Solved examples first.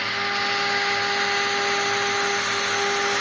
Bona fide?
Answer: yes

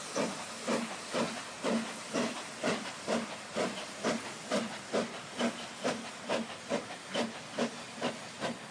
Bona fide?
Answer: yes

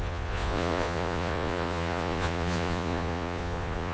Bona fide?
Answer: no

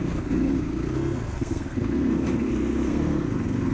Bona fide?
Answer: no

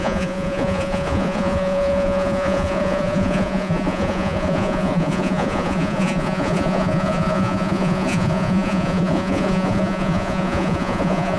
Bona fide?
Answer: no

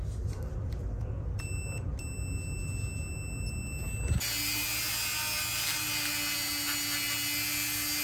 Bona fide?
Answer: yes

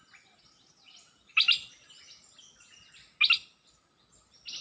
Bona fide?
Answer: yes